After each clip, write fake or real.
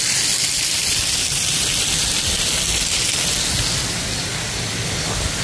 real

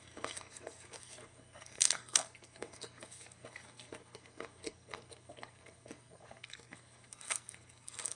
fake